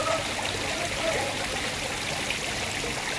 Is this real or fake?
real